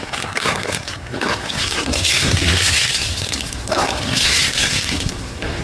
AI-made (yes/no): yes